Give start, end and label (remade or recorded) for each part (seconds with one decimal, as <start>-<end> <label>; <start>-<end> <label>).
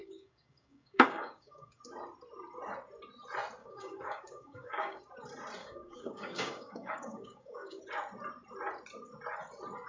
0.0-1.8 remade; 1.8-3.6 recorded; 3.6-5.0 remade; 5.0-5.6 recorded; 5.6-7.8 remade; 7.8-9.9 recorded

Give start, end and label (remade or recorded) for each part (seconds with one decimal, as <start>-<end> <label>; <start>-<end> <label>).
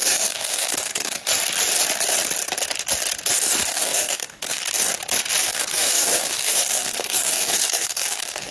0.0-1.3 remade; 1.3-3.6 recorded; 3.6-4.6 remade; 4.6-5.4 recorded; 5.4-8.5 remade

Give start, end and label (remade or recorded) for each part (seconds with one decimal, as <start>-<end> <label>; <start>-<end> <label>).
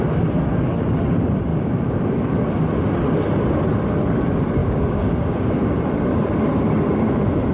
0.0-1.5 recorded; 1.5-2.1 remade; 2.1-4.6 recorded; 4.6-5.8 remade; 5.8-7.5 recorded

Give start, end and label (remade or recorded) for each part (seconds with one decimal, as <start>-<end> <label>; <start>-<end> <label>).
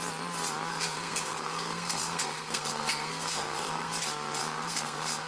0.0-0.7 recorded; 0.7-3.9 remade; 3.9-4.4 recorded; 4.4-5.3 remade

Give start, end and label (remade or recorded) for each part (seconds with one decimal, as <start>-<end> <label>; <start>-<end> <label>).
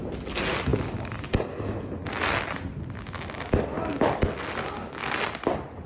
0.0-5.9 recorded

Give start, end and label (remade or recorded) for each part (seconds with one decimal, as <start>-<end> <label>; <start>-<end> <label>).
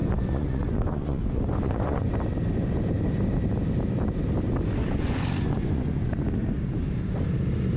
0.0-2.1 remade; 2.1-4.8 recorded; 4.8-6.1 remade; 6.1-7.8 recorded